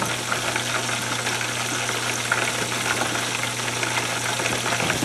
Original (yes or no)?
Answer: yes